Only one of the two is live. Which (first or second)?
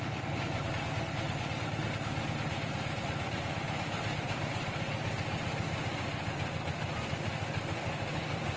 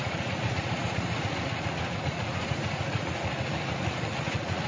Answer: first